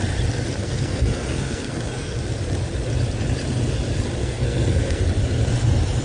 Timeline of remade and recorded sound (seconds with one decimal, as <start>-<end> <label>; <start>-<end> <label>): 0.0-0.6 recorded; 0.6-2.2 remade; 2.2-4.2 recorded; 4.2-5.0 remade; 5.0-6.0 recorded